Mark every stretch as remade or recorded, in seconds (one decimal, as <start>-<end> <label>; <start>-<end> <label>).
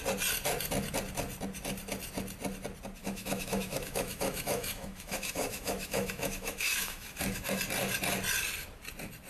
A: 0.0-3.0 recorded; 3.0-7.6 remade; 7.6-9.3 recorded